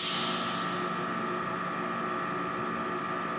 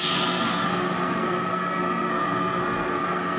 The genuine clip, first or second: first